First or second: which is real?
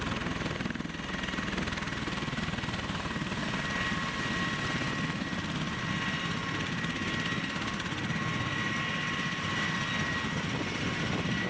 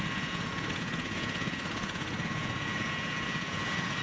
first